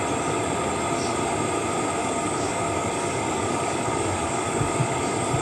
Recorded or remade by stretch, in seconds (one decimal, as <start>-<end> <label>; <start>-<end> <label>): 0.0-2.0 recorded; 2.0-5.4 remade